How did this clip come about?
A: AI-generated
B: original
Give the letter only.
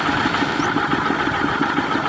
B